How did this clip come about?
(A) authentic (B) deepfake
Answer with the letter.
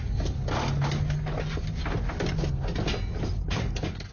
A